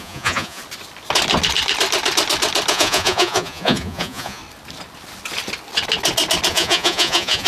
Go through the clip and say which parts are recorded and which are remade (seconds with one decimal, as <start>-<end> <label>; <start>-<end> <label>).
0.0-0.6 remade; 0.6-2.7 recorded; 2.7-4.4 remade; 4.4-6.5 recorded; 6.5-7.5 remade